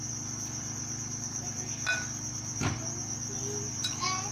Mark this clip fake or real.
real